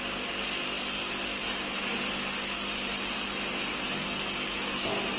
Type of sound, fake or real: real